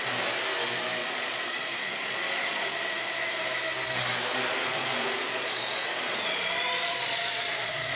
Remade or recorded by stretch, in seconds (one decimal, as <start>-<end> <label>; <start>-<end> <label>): 0.0-1.0 recorded; 1.0-2.8 remade; 2.8-4.5 recorded; 4.5-8.0 remade